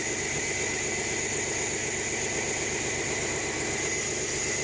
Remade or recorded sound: recorded